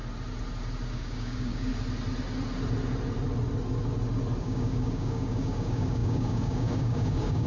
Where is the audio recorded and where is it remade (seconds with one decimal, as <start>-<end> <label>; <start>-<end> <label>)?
0.0-0.9 recorded; 0.9-1.7 remade; 1.7-4.4 recorded; 4.4-7.5 remade